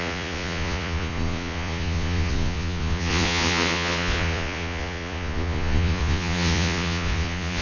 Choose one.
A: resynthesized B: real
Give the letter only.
A